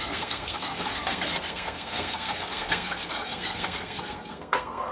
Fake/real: fake